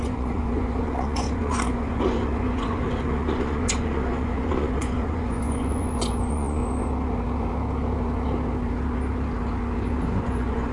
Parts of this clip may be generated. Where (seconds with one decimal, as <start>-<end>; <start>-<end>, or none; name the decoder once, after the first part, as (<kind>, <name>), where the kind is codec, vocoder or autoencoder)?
0.0-6.6 (vocoder, Vocos); 10.0-10.7